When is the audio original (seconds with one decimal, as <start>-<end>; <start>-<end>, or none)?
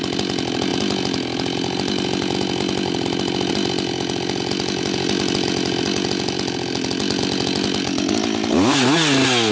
0.0-9.5